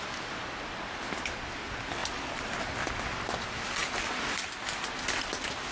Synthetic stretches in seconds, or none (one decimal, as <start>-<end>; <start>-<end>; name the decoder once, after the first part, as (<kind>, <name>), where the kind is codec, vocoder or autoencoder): none